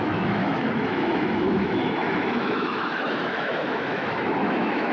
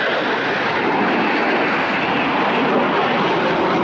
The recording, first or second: second